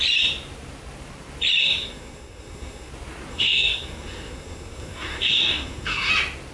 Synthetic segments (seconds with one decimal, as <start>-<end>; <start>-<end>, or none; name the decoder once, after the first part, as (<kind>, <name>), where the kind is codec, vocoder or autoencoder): 1.6-2.9 (codec, SNAC); 3.3-6.1